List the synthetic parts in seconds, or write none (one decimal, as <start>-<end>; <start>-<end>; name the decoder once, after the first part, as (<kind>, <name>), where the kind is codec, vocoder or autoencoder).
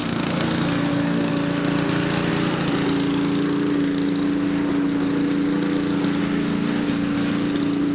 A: 0.0-1.3 (codec, SNAC)